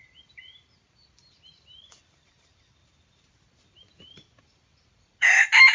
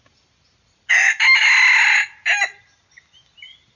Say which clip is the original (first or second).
second